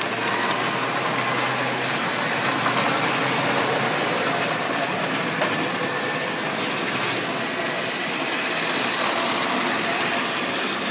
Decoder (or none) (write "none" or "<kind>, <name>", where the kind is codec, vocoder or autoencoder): none